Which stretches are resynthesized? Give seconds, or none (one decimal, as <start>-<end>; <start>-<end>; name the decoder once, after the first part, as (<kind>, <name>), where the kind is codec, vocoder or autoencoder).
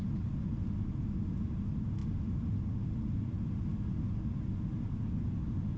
none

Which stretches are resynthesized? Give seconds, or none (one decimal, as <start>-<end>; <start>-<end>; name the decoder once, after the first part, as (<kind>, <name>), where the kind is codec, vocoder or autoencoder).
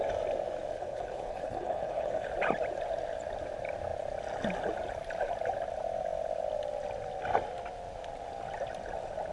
0.7-2.3 (codec, HILCodec)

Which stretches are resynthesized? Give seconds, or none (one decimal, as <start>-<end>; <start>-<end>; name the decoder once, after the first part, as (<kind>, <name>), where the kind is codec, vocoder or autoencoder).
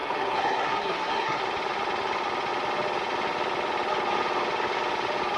0.0-1.4 (codec, SNAC)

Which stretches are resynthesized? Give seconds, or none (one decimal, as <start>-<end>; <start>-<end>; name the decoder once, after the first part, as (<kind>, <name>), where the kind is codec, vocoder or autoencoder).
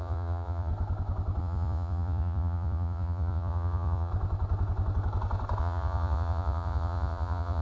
0.0-0.7 (vocoder, Vocos); 1.4-4.1; 5.6-7.6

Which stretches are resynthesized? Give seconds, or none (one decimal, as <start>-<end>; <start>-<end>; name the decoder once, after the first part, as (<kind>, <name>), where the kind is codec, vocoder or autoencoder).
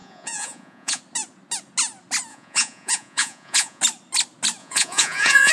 0.0-1.0 (vocoder, Vocos); 2.3-3.8; 4.6-5.5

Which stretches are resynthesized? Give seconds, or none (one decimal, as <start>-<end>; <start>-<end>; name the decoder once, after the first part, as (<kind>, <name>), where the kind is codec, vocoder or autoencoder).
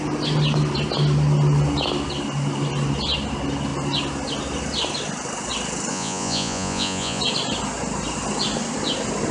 5.9-7.2 (vocoder, Vocos)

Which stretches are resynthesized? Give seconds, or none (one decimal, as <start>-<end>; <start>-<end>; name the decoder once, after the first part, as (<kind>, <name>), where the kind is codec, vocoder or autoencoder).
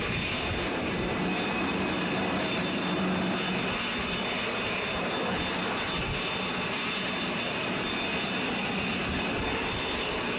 none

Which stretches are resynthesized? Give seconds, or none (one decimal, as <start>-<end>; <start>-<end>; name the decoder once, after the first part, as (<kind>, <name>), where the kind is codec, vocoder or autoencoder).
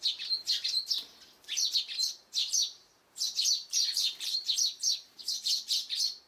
2.4-6.3 (vocoder, BigVGAN v2)